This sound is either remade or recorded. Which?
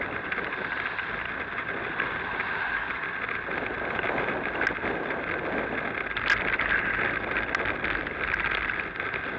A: recorded